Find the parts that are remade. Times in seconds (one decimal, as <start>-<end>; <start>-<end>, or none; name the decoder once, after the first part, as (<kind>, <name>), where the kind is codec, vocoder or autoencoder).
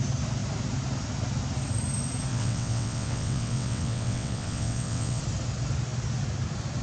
2.3-5.2 (vocoder, WaveNeXt)